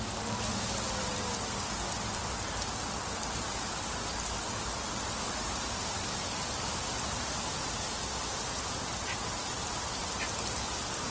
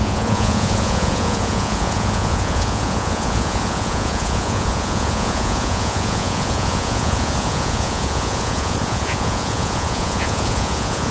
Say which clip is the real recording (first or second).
first